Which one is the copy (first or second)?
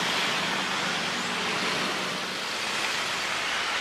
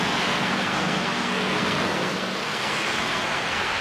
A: second